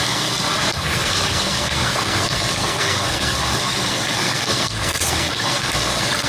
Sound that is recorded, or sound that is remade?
remade